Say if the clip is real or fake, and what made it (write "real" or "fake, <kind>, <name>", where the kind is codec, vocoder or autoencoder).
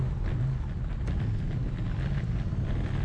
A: real